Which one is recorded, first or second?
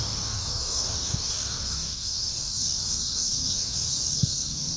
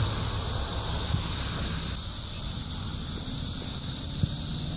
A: second